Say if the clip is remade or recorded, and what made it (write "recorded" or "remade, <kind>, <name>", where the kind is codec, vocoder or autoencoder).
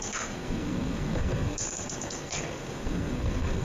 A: remade, codec, SNAC